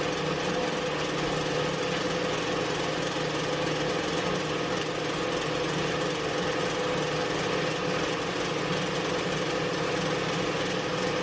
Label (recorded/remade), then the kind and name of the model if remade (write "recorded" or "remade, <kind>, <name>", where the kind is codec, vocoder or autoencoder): recorded